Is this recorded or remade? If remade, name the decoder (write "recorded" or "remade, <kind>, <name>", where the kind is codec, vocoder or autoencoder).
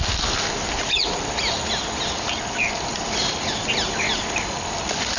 recorded